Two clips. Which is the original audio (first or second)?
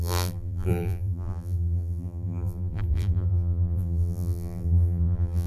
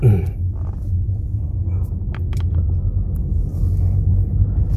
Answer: second